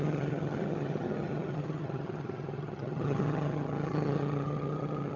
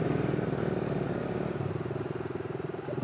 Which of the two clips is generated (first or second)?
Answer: first